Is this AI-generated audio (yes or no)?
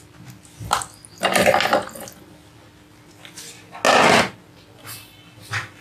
no